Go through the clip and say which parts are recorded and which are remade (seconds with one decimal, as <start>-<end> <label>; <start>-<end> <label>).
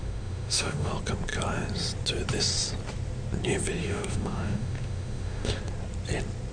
0.0-0.9 remade; 0.9-3.8 recorded; 3.8-5.6 remade; 5.6-6.5 recorded